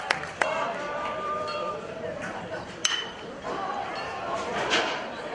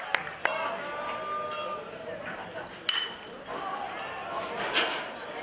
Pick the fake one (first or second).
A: first